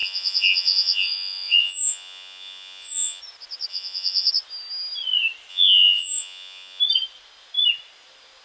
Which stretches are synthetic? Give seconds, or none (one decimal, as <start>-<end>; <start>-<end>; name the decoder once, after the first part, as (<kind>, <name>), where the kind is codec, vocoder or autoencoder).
0.0-3.2 (vocoder, Vocos); 3.7-4.3; 5.5-6.8